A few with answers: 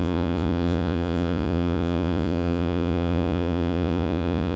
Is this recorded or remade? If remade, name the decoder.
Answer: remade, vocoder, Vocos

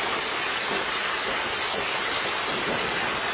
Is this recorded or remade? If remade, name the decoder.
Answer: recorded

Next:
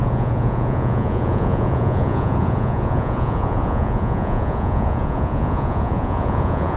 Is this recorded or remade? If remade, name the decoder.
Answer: remade, vocoder, Vocos